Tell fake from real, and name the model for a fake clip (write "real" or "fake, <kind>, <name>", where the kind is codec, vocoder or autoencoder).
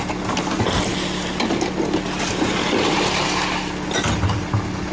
real